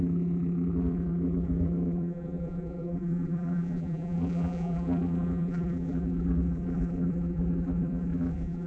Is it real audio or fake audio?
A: fake